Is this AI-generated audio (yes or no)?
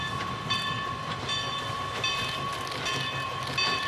no